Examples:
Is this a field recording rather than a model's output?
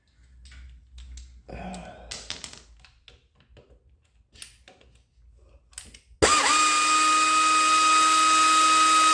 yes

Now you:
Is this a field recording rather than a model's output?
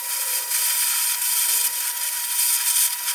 yes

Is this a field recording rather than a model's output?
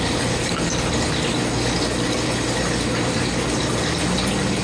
yes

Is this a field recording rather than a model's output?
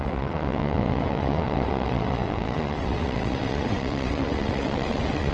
no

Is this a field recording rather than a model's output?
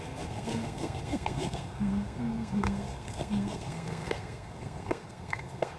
no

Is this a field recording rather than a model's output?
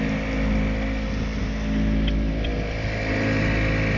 yes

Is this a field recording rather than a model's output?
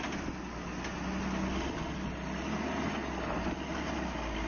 yes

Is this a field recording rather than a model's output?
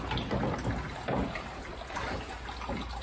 yes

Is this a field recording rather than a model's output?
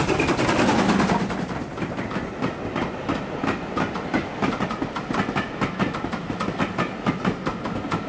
yes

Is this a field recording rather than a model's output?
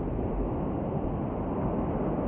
yes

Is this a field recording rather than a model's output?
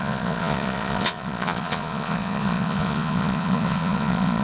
no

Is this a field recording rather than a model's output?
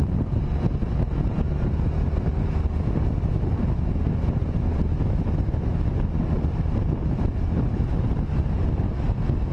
yes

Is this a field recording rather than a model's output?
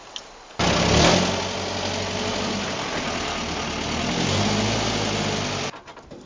yes